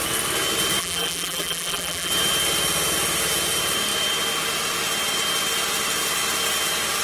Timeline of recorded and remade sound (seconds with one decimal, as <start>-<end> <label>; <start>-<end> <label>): 0.0-0.8 recorded; 0.8-2.1 remade; 2.1-7.0 recorded

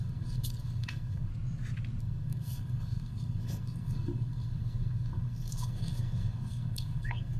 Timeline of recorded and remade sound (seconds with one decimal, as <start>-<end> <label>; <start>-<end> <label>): 0.0-1.3 remade; 1.3-2.0 recorded; 2.0-7.4 remade

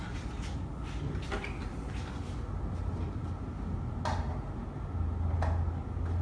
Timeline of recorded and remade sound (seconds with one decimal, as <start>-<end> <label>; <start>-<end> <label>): 0.0-6.2 recorded

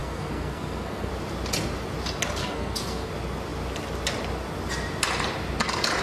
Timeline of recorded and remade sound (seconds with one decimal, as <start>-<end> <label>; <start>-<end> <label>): 0.0-1.1 remade; 1.1-2.4 recorded; 2.4-3.1 remade; 3.1-6.0 recorded

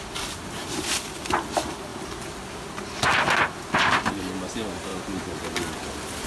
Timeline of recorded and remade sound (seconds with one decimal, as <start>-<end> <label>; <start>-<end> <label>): 0.0-6.3 recorded

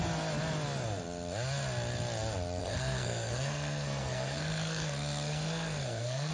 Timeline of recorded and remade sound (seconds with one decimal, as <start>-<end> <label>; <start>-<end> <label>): 0.0-2.6 recorded; 2.6-6.3 remade

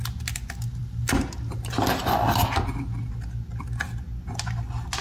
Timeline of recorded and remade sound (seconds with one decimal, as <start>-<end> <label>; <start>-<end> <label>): 0.0-5.0 recorded